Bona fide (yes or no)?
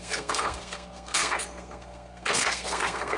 no